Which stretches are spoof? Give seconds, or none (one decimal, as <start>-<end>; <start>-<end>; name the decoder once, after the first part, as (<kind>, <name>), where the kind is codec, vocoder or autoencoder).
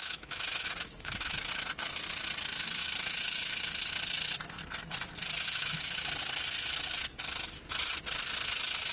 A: 0.0-1.5 (autoencoder, DAC-VAE); 2.8-3.7